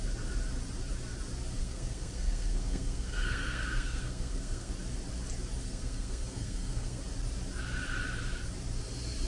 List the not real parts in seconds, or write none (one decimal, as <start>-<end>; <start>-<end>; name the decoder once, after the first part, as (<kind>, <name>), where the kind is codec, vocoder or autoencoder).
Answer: 1.6-4.7 (codec, SNAC); 5.6-7.0